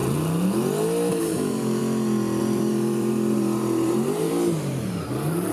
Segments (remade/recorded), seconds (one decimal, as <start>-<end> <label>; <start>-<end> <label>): 0.0-1.2 recorded; 1.2-1.8 remade; 1.8-2.4 recorded; 2.4-5.5 remade